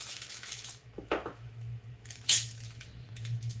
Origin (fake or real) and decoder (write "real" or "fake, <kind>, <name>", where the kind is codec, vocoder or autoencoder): fake, autoencoder, DAC-VAE